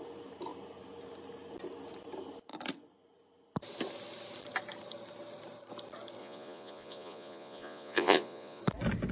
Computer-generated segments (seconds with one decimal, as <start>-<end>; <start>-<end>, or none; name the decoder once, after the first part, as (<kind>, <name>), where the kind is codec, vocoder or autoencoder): 6.2-8.6 (vocoder, Vocos)